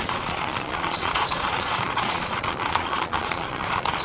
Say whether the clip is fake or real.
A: fake